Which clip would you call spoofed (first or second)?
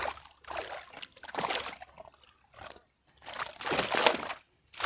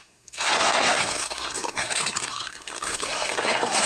second